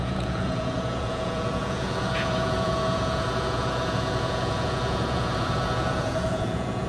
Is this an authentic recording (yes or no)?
no